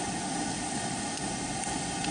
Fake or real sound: real